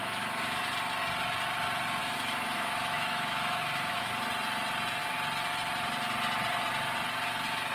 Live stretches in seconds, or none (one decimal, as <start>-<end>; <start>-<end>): 0.7-2.0; 4.1-7.7